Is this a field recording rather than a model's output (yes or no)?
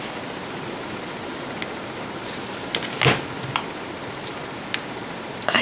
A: yes